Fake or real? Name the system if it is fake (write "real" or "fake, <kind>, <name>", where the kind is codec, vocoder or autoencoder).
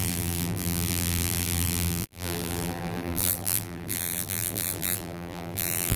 fake, vocoder, BigVGAN v2